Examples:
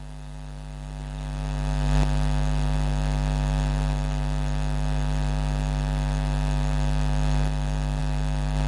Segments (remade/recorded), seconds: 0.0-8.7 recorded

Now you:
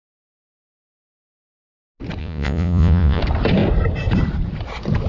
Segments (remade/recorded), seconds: 0.0-2.2 recorded; 2.2-3.2 remade; 3.2-5.1 recorded

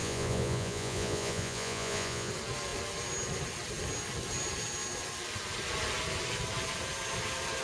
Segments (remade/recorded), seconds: 0.0-2.3 remade; 2.3-7.6 recorded

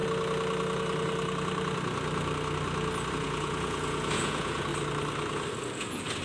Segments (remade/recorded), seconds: 0.0-3.1 recorded; 3.1-4.7 remade; 4.7-5.6 recorded; 5.6-6.2 remade

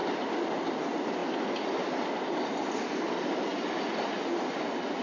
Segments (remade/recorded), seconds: 0.0-5.0 recorded

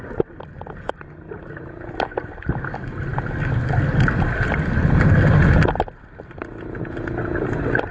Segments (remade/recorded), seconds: 0.0-7.9 recorded